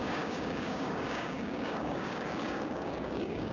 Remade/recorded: remade